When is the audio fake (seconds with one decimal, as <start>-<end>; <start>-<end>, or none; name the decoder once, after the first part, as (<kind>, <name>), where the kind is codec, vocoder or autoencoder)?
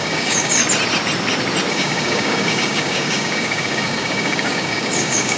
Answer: 0.0-0.6 (codec, DAC); 1.7-5.4